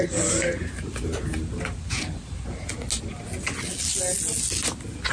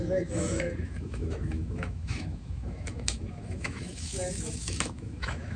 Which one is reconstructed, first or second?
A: second